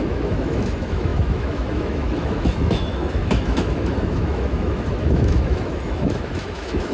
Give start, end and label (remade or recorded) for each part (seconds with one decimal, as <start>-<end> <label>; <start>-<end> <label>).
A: 0.0-6.9 remade